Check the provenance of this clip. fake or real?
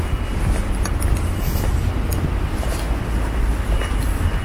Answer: real